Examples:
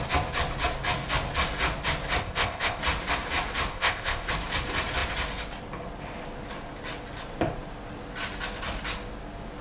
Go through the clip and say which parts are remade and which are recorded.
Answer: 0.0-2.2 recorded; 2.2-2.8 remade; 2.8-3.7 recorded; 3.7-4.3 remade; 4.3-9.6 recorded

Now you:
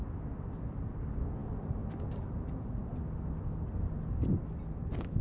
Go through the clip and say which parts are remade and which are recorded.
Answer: 0.0-5.2 recorded

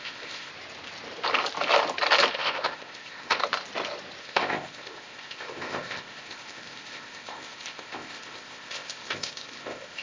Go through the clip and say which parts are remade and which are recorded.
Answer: 0.0-0.5 remade; 0.5-2.3 recorded; 2.3-3.4 remade; 3.4-4.2 recorded; 4.2-10.0 remade